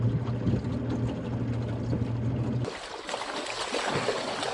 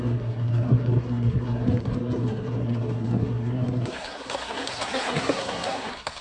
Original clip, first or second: first